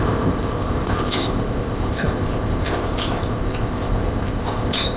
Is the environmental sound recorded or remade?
remade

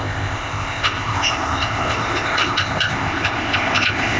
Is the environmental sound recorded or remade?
remade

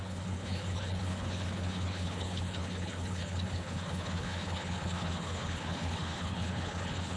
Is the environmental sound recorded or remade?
remade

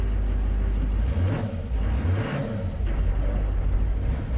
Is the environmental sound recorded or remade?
recorded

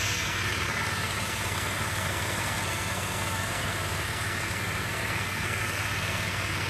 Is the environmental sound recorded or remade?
remade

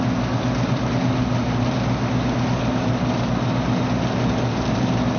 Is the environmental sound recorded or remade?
recorded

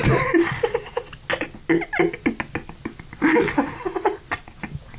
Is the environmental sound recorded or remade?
recorded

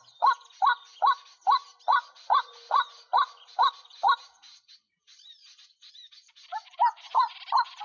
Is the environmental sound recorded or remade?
recorded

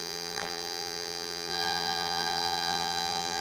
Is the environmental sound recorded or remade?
remade